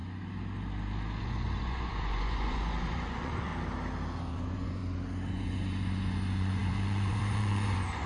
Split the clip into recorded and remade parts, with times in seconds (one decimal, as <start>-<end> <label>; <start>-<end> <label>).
0.0-1.2 recorded; 1.2-3.5 remade; 3.5-4.3 recorded; 4.3-4.8 remade; 4.8-5.3 recorded; 5.3-8.1 remade